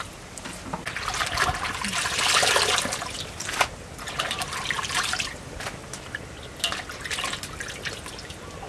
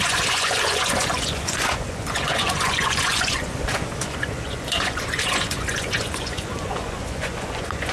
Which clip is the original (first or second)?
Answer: first